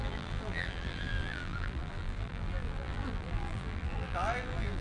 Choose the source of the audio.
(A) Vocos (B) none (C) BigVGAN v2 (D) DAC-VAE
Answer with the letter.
C